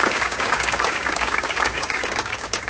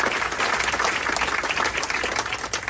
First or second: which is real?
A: second